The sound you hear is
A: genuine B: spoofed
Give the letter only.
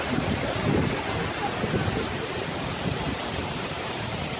A